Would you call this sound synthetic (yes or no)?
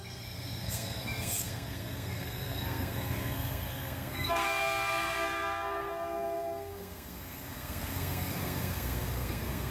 yes